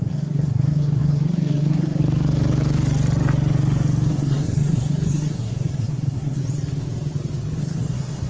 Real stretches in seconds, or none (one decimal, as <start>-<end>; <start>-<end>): 2.0-4.1; 6.4-7.6